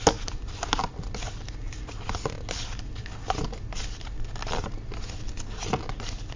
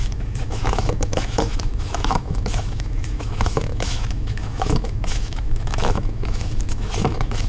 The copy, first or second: second